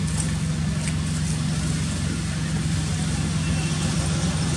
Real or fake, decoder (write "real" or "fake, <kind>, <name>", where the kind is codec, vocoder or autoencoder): real